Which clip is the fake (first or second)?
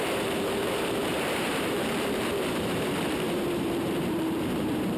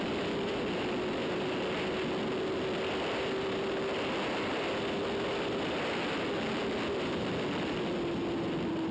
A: first